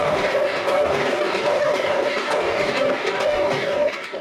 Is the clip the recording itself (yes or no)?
no